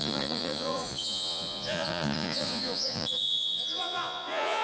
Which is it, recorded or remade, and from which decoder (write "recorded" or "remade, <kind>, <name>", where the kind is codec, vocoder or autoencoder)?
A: remade, vocoder, Vocos